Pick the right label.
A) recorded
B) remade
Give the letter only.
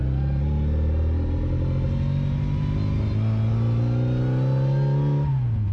A